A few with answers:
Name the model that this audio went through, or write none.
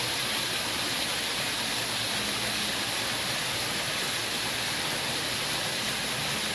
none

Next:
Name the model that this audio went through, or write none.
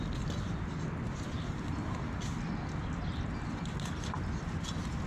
none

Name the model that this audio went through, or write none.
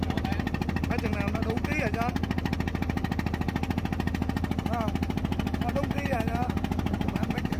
none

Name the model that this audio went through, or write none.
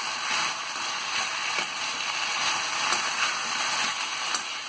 none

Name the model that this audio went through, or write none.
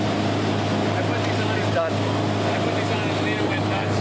none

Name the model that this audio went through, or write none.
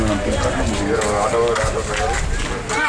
none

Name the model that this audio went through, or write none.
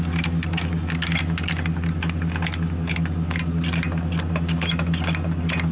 none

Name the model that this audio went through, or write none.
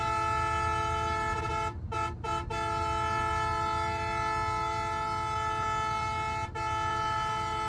none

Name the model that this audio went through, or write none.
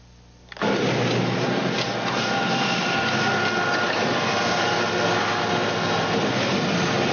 none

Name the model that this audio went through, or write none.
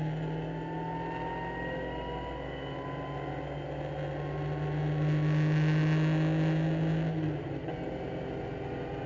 none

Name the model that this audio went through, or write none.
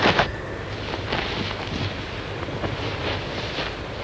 none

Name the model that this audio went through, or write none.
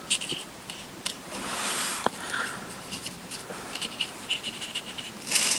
vocoder, BigVGAN v2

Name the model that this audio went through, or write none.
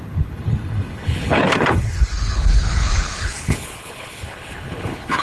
codec, HILCodec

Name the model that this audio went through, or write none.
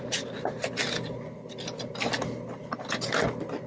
none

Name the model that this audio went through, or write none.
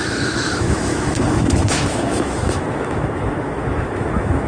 autoencoder, DAC-VAE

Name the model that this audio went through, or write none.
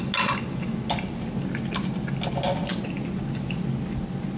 none